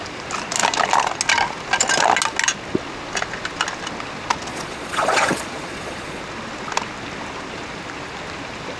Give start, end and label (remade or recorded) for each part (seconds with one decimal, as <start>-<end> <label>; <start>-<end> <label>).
0.0-4.5 recorded; 4.5-6.2 remade; 6.2-8.8 recorded